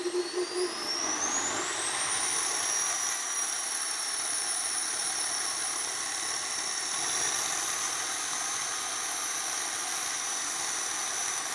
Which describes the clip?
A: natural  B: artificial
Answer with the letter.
A